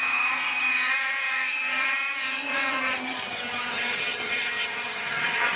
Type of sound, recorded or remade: remade